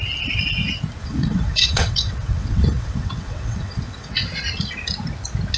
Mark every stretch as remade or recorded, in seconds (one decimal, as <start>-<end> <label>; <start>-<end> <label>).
0.0-1.0 recorded; 1.0-4.4 remade; 4.4-5.6 recorded